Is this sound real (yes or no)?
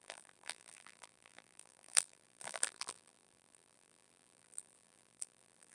no